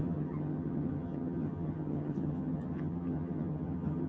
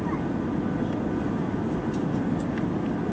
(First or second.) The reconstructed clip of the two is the first